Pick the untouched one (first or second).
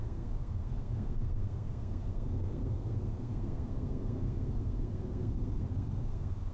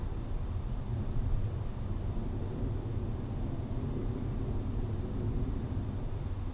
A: second